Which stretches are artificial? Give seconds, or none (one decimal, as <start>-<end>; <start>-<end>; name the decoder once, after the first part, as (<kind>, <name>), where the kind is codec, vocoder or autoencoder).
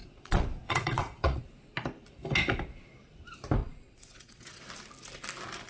0.0-1.4 (vocoder, Vocos); 3.6-4.6